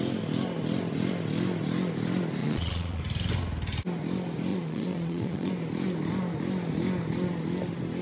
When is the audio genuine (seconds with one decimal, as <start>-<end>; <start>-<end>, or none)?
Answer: 0.0-2.4; 3.0-4.5; 5.5-8.0